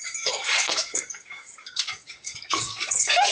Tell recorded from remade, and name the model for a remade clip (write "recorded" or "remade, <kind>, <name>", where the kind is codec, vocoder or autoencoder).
remade, codec, DAC